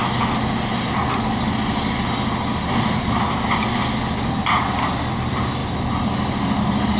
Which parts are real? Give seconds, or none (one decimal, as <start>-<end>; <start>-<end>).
0.0-7.0